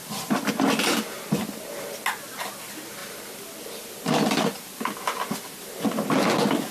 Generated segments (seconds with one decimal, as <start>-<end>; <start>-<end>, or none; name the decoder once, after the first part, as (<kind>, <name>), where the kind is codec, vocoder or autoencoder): 0.0-0.5 (vocoder, BigVGAN v2); 3.0-5.7